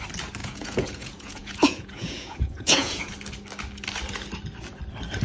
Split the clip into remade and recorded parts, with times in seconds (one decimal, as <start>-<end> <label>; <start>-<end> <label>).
0.0-0.4 recorded; 0.4-3.1 remade; 3.1-5.2 recorded